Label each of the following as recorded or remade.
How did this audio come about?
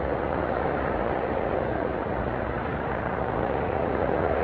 remade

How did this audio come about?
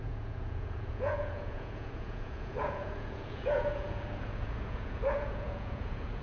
remade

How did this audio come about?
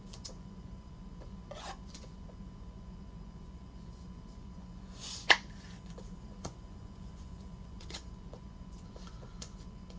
remade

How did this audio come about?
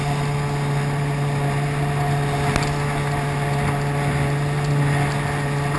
recorded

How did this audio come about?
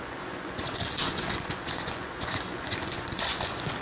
remade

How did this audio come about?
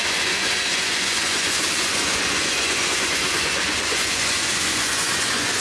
remade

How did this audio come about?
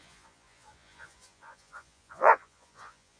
remade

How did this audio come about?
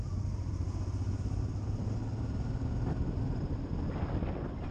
recorded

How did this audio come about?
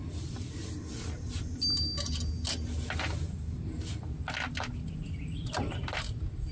recorded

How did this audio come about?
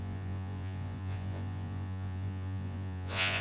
remade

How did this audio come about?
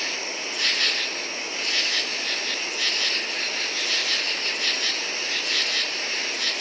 recorded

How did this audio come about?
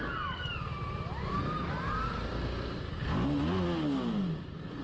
recorded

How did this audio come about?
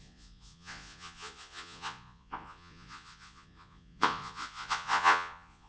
remade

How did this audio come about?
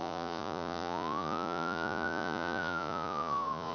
remade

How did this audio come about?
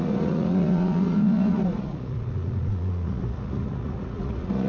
remade